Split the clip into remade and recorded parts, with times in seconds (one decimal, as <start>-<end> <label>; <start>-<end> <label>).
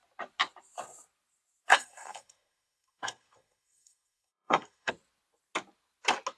0.0-1.7 recorded; 1.7-4.9 remade; 4.9-6.4 recorded